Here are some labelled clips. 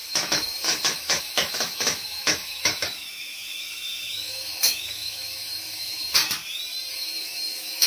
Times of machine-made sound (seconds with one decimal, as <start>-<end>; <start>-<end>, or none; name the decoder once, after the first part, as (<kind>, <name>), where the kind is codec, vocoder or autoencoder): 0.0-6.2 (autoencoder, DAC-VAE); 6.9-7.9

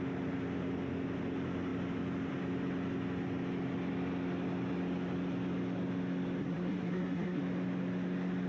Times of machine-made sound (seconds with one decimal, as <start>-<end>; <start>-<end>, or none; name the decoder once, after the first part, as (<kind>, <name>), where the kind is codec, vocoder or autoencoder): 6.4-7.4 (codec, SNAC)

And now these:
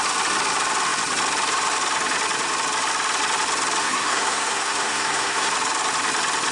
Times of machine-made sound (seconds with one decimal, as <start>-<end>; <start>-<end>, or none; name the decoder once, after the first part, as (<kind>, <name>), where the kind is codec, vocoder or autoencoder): 3.8-5.5 (codec, SNAC)

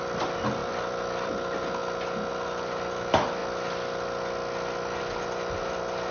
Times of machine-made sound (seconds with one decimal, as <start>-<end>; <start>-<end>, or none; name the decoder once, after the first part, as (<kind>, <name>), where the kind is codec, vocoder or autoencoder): 0.6-1.3 (vocoder, BigVGAN v2)

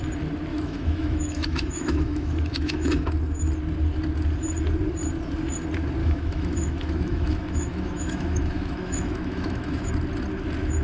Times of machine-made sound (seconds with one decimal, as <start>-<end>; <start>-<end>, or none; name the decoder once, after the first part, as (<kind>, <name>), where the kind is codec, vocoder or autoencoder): 0.5-3.1 (autoencoder, DAC-VAE); 6.0-9.9